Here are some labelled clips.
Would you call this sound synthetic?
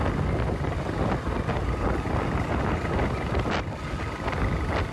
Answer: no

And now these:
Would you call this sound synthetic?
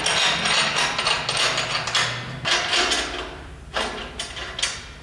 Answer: no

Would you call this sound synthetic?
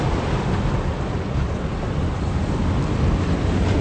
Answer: no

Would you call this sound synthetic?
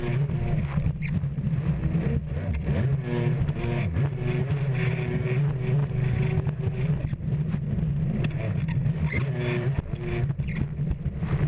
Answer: no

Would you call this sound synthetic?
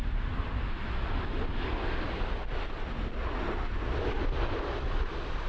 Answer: no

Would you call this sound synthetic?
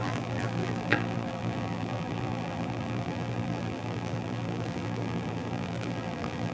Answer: yes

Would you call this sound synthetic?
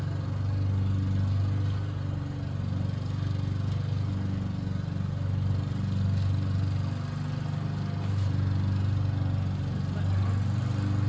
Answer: no